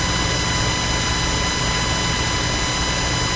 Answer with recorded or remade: recorded